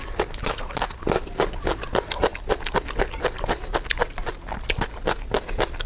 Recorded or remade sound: recorded